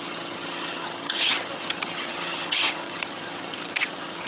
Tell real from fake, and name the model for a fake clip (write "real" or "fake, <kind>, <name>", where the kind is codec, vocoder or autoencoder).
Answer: fake, vocoder, HiFi-GAN